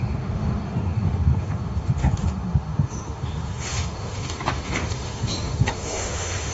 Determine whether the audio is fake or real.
fake